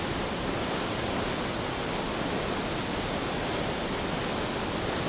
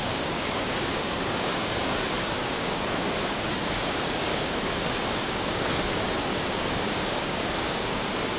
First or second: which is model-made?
second